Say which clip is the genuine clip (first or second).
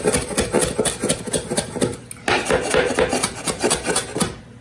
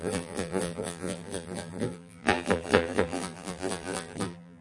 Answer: first